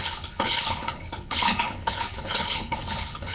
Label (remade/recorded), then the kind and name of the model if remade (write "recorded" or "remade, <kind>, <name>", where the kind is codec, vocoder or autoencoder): remade, codec, HILCodec